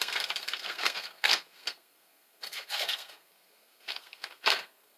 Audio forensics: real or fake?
fake